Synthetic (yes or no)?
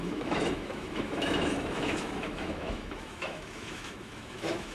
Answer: yes